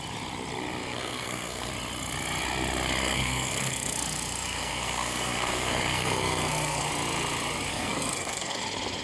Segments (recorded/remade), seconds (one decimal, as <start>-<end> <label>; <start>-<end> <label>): 0.0-0.8 recorded; 0.8-1.7 remade; 1.7-3.0 recorded; 3.0-6.9 remade; 6.9-7.7 recorded; 7.7-8.6 remade; 8.6-9.0 recorded

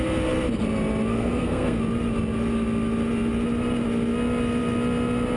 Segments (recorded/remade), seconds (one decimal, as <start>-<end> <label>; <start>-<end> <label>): 0.0-1.1 recorded; 1.1-1.8 remade; 1.8-5.4 recorded